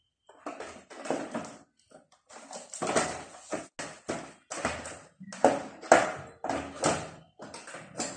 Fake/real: real